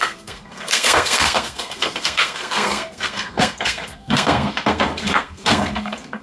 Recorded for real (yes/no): no